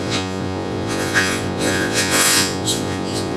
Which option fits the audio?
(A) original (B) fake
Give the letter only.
B